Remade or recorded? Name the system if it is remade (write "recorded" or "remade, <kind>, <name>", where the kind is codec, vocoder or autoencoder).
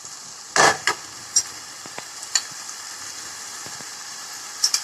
recorded